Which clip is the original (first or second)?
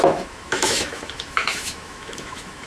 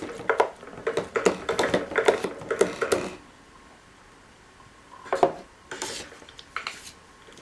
second